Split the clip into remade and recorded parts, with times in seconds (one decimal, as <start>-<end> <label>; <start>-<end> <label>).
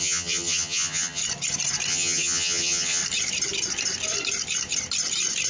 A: 0.0-1.2 remade; 1.2-1.9 recorded; 1.9-3.0 remade; 3.0-5.5 recorded